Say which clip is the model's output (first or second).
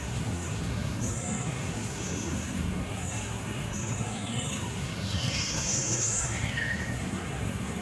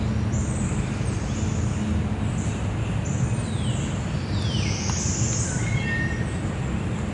first